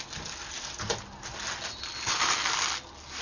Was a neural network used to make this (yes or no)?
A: no